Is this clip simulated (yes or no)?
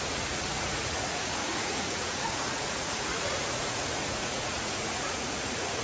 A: yes